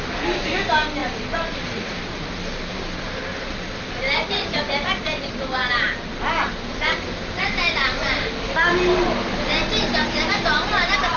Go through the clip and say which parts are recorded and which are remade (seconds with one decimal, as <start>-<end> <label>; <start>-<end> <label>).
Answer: 0.0-11.2 recorded